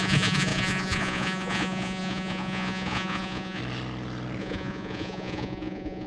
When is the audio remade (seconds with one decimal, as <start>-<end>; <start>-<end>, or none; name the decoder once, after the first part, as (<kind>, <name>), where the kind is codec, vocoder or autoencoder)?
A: 0.0-3.6 (vocoder, Vocos); 4.4-6.1